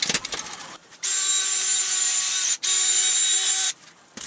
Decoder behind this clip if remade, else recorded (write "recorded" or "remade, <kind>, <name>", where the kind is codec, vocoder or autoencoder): recorded